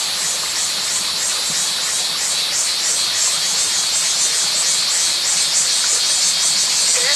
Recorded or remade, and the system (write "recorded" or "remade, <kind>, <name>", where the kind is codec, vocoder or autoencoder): recorded